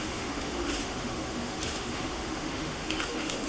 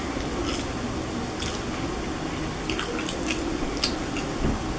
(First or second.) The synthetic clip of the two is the first